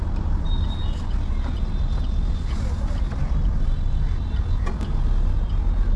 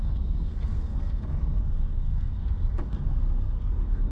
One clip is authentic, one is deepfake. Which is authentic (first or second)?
first